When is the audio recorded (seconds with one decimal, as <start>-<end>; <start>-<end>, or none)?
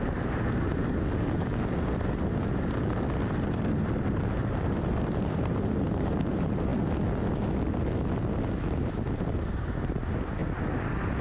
0.8-4.1; 6.7-8.8; 10.4-11.2